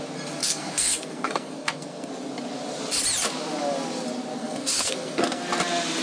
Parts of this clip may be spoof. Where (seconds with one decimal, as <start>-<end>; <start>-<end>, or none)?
0.4-2.1; 4.4-5.4